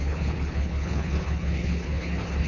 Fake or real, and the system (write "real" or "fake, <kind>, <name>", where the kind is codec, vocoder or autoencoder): fake, codec, HILCodec